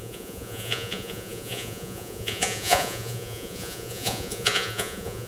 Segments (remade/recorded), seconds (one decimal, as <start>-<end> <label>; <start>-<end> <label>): 0.0-5.3 remade